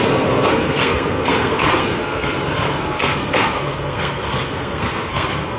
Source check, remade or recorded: remade